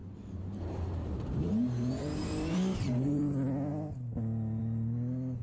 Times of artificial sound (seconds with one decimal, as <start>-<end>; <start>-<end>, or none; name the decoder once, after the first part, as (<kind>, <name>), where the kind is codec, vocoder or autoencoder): 0.0-3.2 (vocoder, BigVGAN v2)